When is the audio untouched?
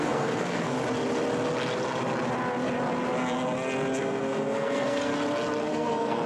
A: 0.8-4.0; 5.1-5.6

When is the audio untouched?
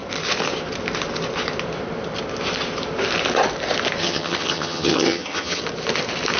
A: 0.0-4.0; 5.6-6.4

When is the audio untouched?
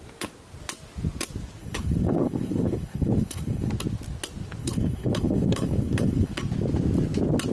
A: 0.0-1.6; 3.7-4.6; 6.3-7.5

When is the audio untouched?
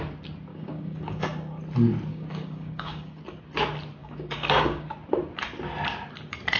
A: 0.0-0.5; 1.6-2.1; 3.2-4.0; 4.9-6.6